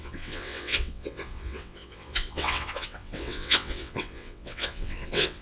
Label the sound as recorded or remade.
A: remade